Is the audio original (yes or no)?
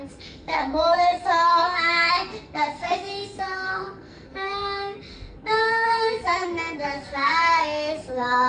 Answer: no